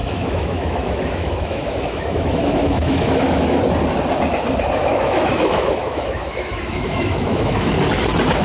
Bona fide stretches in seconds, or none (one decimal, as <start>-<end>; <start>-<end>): 3.6-4.8; 7.7-8.4